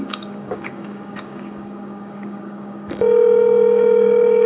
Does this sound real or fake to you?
fake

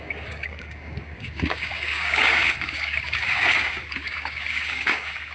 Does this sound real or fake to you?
fake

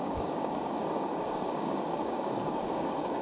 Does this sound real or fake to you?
fake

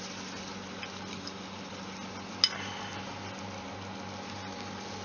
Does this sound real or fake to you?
real